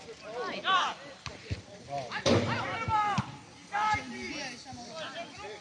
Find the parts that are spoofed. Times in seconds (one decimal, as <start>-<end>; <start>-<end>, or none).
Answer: none